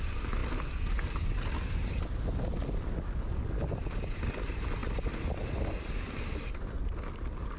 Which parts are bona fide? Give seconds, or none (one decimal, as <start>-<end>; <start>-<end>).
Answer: 0.0-7.6